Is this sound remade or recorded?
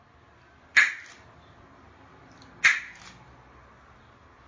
recorded